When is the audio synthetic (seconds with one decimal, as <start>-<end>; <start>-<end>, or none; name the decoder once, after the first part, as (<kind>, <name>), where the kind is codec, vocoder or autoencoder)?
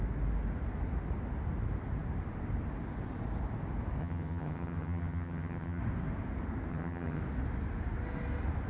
4.0-5.8 (vocoder, HiFi-GAN); 6.7-7.2